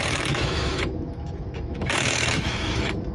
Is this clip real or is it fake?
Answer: fake